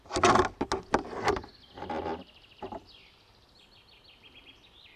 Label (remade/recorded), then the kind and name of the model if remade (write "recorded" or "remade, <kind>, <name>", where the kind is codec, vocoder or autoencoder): recorded